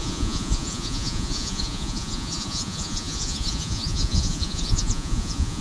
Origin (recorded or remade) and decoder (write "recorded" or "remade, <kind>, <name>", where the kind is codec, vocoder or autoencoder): remade, vocoder, Vocos